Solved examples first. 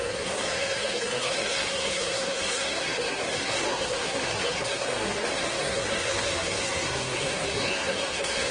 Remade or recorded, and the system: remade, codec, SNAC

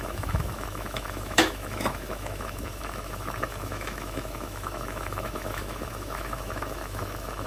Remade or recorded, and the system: remade, autoencoder, DAC-VAE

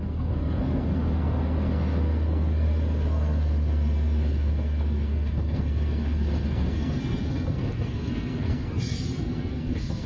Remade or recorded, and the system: remade, codec, SNAC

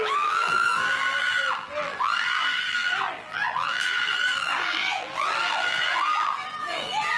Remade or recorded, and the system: remade, vocoder, BigVGAN v2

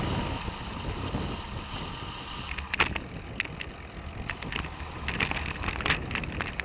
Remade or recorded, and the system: recorded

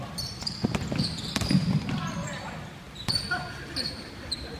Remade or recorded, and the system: remade, vocoder, BigVGAN v2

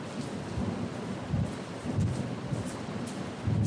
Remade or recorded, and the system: recorded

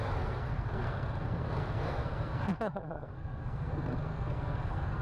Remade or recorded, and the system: remade, codec, SNAC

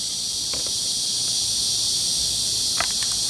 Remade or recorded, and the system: recorded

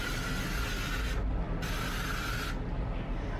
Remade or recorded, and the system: recorded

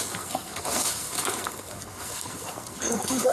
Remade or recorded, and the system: remade, codec, SNAC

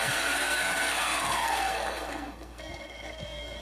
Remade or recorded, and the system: remade, codec, SNAC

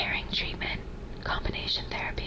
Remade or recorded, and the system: recorded